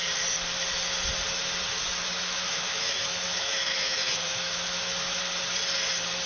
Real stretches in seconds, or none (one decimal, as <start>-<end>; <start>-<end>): 0.0-1.8; 5.2-6.3

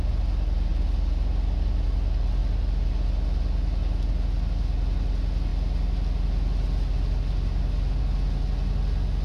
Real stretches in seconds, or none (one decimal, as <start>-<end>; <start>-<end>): 0.0-9.2

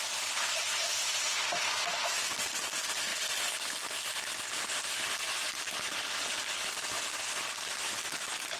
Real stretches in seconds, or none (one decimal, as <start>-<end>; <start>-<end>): 0.0-8.6

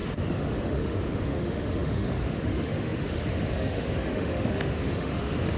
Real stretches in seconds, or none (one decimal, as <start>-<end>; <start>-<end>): none

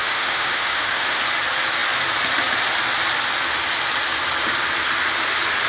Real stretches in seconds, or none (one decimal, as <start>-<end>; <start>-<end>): 1.2-5.7